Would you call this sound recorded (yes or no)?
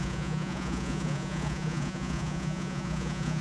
no